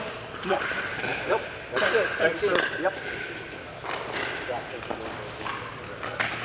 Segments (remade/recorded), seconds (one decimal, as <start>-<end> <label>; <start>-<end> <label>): 0.0-6.4 recorded